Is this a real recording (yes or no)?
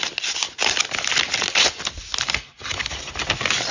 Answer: yes